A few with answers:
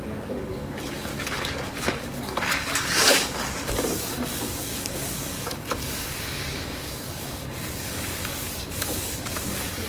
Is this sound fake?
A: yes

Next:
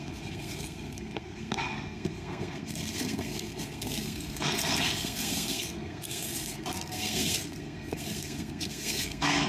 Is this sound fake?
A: yes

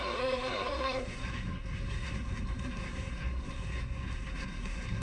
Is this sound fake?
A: yes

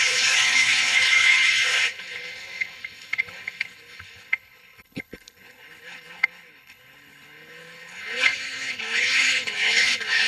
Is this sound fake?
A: yes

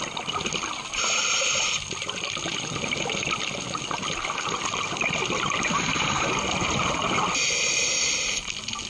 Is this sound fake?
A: no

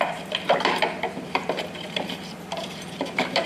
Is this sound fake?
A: yes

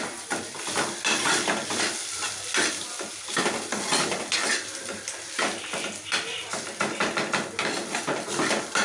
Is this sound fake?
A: no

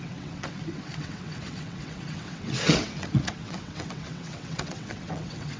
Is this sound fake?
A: yes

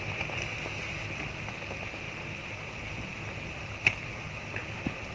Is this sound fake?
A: no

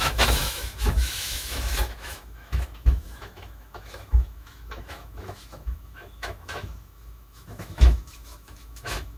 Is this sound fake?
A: yes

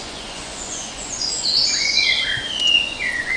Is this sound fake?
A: yes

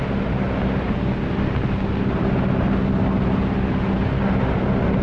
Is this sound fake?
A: no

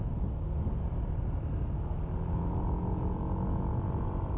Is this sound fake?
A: no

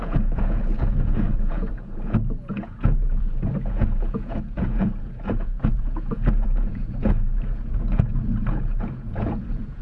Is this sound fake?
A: yes